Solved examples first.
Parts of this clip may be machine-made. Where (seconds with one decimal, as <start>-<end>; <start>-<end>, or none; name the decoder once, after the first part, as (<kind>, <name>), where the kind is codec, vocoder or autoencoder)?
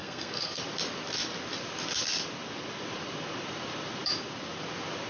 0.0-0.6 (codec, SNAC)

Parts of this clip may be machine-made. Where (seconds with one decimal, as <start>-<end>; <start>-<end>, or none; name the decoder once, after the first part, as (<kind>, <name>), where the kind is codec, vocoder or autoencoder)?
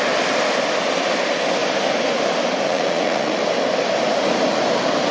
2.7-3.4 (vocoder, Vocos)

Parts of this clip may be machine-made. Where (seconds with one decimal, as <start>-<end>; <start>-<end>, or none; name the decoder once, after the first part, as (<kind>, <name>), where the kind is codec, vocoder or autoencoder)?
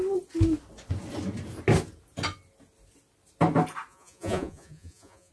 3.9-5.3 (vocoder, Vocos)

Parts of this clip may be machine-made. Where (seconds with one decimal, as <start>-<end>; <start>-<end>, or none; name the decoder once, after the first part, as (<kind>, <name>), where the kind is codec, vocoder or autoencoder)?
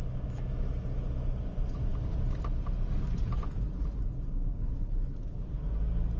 none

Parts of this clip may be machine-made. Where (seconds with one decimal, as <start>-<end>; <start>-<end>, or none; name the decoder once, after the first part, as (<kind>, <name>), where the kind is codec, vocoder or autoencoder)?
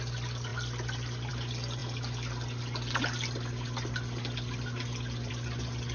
none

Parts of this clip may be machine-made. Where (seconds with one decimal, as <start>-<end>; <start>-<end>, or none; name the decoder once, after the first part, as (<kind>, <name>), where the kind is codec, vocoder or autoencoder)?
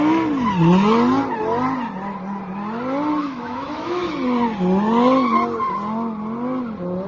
3.2-4.1 (autoencoder, DAC-VAE)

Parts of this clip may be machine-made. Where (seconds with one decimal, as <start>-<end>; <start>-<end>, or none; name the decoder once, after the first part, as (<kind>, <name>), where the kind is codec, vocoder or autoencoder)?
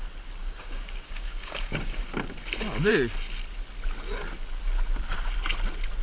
0.4-2.0 (codec, DAC)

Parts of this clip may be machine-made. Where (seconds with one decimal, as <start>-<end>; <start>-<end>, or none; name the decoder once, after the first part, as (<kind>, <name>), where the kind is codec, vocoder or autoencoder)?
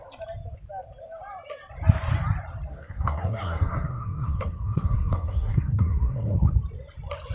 2.7-6.5 (codec, SNAC)